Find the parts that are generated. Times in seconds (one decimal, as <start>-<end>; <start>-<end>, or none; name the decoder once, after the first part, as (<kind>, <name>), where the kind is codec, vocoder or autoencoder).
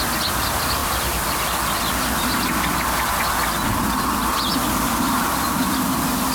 0.8-4.6 (vocoder, BigVGAN v2)